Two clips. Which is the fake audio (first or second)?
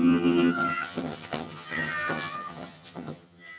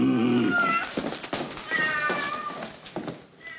first